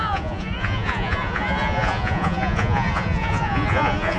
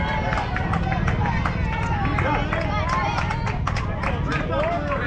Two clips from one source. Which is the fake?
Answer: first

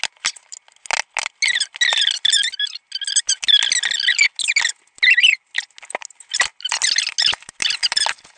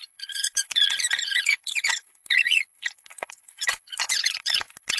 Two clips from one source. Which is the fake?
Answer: second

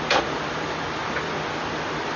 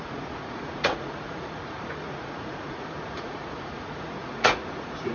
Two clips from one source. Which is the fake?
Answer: second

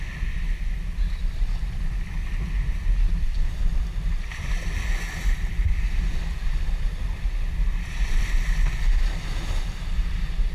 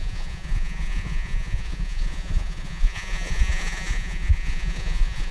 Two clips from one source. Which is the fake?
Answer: second